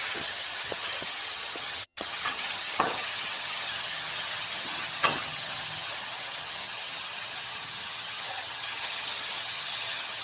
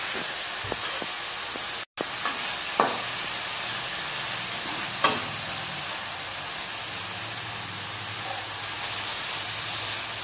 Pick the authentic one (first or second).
second